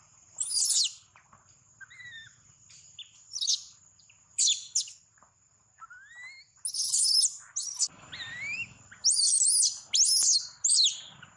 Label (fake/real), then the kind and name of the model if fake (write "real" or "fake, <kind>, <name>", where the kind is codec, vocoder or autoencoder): real